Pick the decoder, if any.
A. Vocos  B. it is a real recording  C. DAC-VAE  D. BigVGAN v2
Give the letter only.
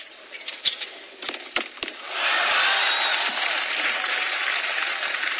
D